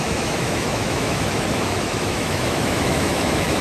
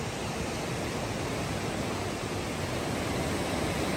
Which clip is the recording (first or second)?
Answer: second